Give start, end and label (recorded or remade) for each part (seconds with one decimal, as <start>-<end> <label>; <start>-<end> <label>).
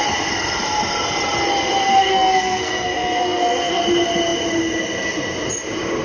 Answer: 0.0-1.9 recorded; 1.9-3.8 remade; 3.8-6.0 recorded